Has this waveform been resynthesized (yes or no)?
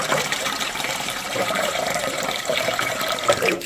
yes